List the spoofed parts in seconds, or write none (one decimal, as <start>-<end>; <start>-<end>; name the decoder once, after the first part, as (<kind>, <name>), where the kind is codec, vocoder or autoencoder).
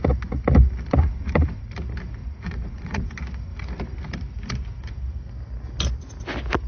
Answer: 1.0-1.6 (vocoder, Vocos); 2.2-3.1